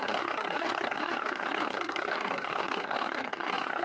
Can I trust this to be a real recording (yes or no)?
no